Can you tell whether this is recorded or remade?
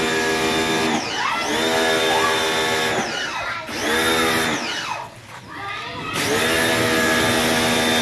recorded